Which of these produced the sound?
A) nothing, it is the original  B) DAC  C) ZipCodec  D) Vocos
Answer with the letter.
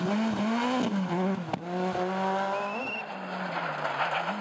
A